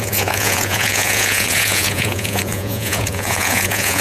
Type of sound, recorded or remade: remade